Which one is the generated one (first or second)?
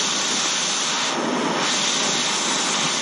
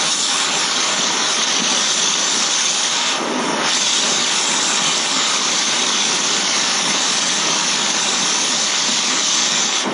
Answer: second